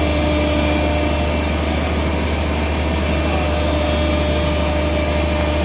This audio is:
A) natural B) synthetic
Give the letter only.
A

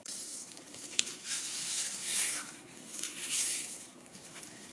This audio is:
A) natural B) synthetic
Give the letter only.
B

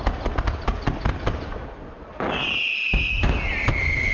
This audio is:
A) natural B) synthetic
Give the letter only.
A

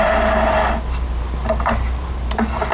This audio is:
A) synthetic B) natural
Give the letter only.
B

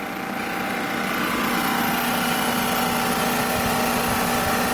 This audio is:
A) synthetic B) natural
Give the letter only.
B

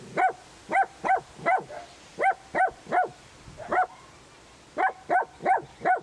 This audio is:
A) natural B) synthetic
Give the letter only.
A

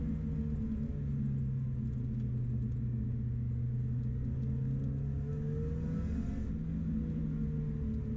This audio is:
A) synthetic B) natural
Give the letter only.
B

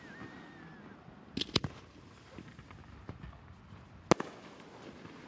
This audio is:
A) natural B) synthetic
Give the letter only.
A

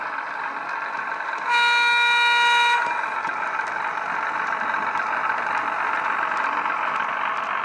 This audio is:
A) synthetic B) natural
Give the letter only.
B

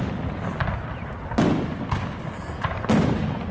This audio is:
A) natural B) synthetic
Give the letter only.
A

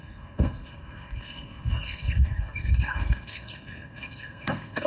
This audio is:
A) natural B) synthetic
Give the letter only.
B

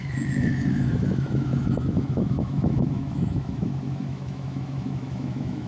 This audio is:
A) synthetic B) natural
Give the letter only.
A